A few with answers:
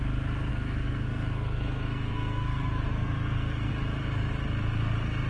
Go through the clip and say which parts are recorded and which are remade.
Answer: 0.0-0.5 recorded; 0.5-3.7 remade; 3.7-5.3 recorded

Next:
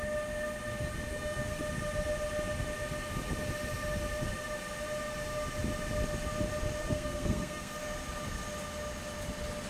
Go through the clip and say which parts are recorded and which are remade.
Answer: 0.0-1.1 recorded; 1.1-1.6 remade; 1.6-6.8 recorded; 6.8-7.8 remade; 7.8-9.7 recorded

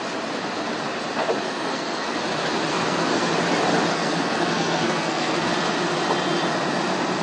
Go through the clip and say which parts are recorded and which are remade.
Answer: 0.0-1.4 recorded; 1.4-2.2 remade; 2.2-2.7 recorded; 2.7-3.3 remade; 3.3-3.9 recorded; 3.9-5.5 remade; 5.5-7.2 recorded

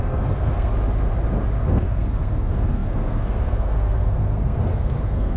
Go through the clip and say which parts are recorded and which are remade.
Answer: 0.0-0.7 remade; 0.7-1.6 recorded; 1.6-5.4 remade

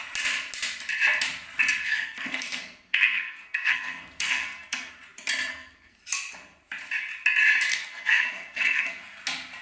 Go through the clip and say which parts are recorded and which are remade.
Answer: 0.0-1.8 recorded; 1.8-4.9 remade; 4.9-5.5 recorded; 5.5-6.0 remade; 6.0-7.7 recorded; 7.7-9.2 remade; 9.2-9.6 recorded

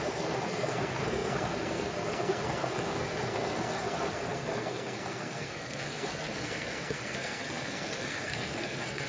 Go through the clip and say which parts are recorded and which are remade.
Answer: 0.0-9.1 remade